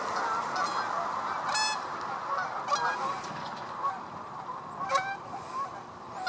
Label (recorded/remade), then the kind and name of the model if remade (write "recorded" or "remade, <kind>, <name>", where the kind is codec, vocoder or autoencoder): recorded